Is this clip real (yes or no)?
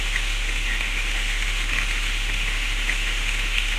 no